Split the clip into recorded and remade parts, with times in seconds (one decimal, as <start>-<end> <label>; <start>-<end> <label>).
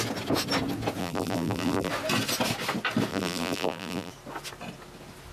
0.0-1.0 recorded; 1.0-1.9 remade; 1.9-3.1 recorded; 3.1-4.1 remade; 4.1-5.3 recorded